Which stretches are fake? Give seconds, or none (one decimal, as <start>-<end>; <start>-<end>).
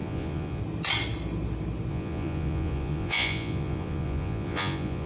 0.0-0.6; 1.9-5.1